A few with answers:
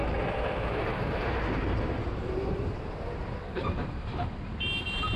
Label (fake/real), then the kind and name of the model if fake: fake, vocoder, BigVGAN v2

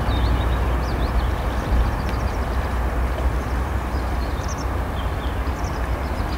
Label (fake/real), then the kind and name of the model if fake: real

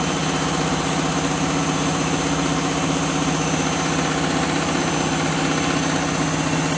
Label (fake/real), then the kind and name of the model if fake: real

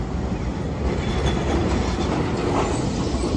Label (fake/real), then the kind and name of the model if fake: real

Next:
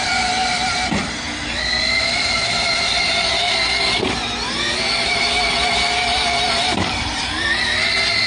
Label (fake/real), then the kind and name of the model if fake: real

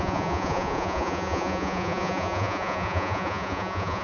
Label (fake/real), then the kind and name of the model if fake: fake, vocoder, Vocos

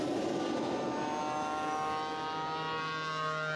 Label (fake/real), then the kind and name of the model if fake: real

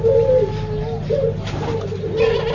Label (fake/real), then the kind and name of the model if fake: real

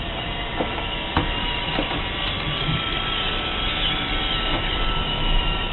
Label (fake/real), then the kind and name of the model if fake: real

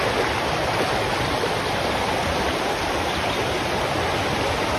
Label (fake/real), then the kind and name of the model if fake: real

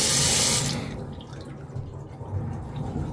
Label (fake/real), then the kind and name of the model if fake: real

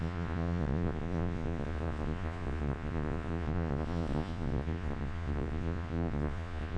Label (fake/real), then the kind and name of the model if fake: fake, vocoder, Vocos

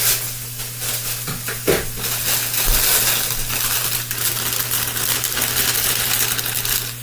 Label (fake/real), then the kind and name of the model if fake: real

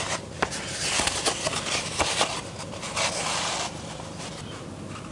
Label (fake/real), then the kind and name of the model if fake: real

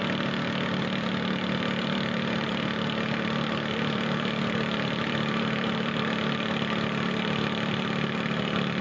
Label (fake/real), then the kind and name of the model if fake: fake, vocoder, BigVGAN v2